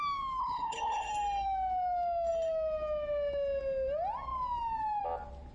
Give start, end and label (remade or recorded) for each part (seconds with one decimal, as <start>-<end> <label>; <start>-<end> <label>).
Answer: 0.0-0.4 recorded; 0.4-1.1 remade; 1.1-5.5 recorded